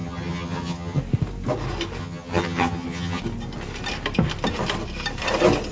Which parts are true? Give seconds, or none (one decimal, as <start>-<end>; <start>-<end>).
1.0-2.0; 3.2-5.7